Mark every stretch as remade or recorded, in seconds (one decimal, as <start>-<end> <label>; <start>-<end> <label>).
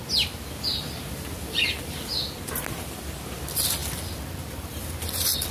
0.0-5.5 recorded